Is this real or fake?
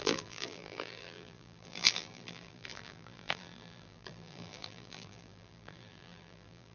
fake